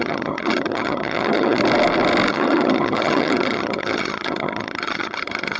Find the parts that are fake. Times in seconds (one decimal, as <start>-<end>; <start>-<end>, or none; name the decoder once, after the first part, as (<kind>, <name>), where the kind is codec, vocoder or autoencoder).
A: 0.0-1.6 (vocoder, HiFi-GAN); 2.3-5.6